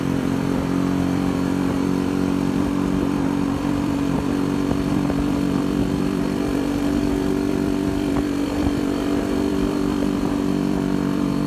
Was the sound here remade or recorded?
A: remade